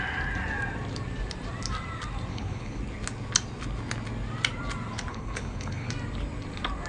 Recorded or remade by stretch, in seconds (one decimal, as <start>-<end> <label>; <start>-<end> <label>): 0.0-2.3 recorded; 2.3-2.8 remade; 2.8-5.1 recorded; 5.1-5.9 remade; 5.9-6.9 recorded